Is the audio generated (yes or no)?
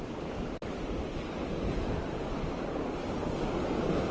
no